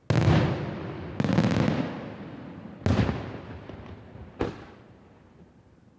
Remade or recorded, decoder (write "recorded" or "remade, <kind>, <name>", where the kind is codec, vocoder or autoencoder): recorded